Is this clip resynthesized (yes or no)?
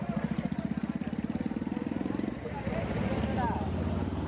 no